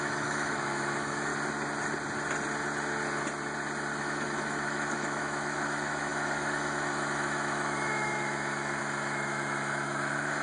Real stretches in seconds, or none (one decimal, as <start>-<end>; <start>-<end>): 1.3-4.0